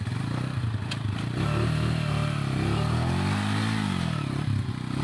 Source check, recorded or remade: recorded